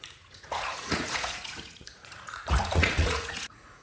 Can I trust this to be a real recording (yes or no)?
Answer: no